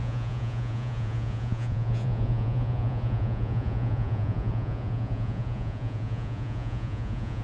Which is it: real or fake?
fake